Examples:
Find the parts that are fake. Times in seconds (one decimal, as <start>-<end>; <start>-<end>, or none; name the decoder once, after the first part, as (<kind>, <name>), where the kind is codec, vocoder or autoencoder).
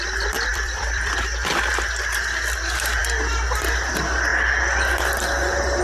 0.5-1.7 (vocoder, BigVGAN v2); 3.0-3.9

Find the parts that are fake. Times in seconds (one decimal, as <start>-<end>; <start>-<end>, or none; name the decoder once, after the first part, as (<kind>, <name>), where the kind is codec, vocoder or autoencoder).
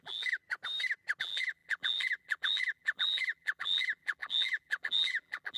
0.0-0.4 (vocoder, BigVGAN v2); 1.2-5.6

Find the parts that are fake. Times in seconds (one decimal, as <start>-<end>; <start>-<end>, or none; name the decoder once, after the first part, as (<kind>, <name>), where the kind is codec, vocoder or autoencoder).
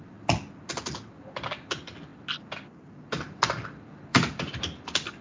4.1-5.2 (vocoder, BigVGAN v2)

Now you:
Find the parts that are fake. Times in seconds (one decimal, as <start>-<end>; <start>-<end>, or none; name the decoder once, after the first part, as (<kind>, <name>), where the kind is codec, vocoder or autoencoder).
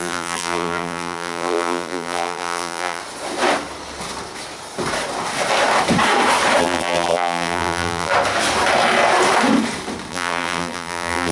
0.0-3.0 (vocoder, BigVGAN v2); 6.6-8.1; 10.1-11.3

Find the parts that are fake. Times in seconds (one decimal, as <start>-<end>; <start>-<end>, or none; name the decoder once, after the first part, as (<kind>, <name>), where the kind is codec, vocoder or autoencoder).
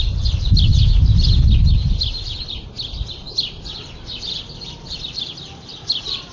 0.0-0.7 (vocoder, BigVGAN v2); 3.1-6.3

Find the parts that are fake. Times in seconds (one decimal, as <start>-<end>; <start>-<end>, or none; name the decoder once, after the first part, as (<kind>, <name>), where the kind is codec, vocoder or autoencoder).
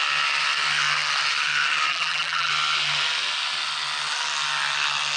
1.9-2.5 (vocoder, BigVGAN v2)